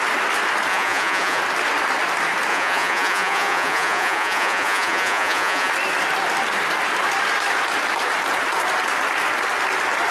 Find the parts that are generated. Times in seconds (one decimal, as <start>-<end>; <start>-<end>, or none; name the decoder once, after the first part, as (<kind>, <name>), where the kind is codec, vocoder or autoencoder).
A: 0.7-1.4 (vocoder, Vocos); 2.5-5.7